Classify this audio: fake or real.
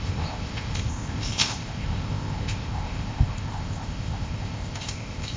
fake